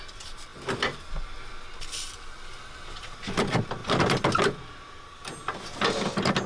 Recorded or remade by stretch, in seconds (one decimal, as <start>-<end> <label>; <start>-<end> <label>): 0.0-6.5 recorded